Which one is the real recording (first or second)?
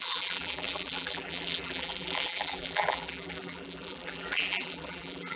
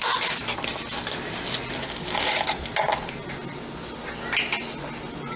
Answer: second